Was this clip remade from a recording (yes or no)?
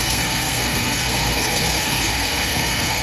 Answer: yes